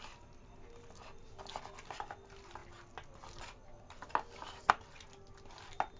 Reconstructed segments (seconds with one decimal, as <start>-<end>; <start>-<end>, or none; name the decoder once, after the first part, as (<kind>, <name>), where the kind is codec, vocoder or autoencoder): none